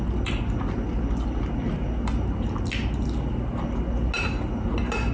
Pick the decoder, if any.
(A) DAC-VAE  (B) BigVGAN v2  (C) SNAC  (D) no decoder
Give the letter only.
D